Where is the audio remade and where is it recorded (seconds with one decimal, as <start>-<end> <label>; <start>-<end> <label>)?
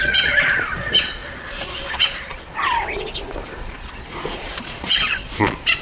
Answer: 0.0-5.8 remade